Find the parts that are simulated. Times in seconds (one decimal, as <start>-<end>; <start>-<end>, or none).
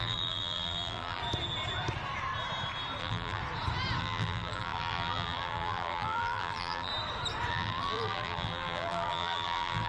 0.0-1.2; 3.0-3.4; 4.0-6.9; 7.5-9.9